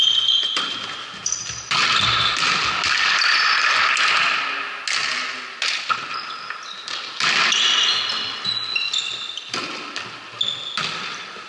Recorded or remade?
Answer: recorded